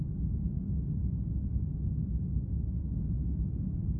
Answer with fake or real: real